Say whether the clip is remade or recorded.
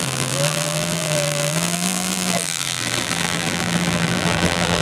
remade